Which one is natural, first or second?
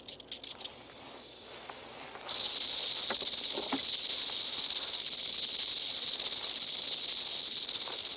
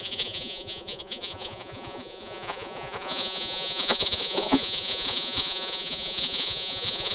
first